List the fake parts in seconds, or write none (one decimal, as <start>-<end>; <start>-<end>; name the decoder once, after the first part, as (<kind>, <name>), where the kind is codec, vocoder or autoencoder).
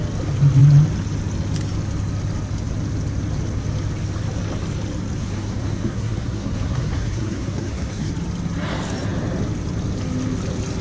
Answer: 5.2-8.1 (codec, SNAC)